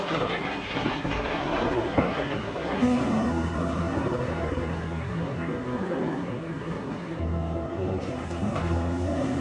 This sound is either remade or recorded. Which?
remade